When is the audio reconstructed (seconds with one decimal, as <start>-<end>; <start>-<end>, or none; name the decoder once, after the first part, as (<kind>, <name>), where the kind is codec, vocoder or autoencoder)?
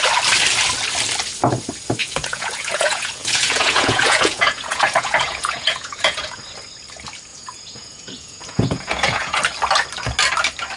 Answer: 2.0-6.4 (vocoder, Vocos); 7.3-9.4